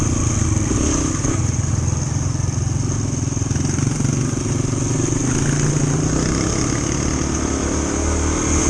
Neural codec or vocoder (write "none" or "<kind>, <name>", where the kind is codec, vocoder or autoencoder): none